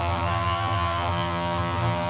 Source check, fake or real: fake